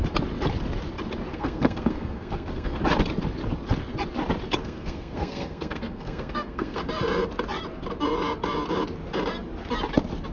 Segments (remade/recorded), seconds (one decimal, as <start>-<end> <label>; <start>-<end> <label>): 0.0-1.3 recorded; 1.3-2.8 remade; 2.8-4.6 recorded; 4.6-6.8 remade; 6.8-10.3 recorded